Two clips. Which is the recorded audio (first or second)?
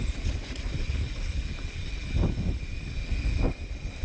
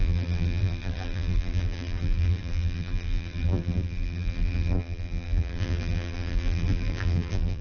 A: first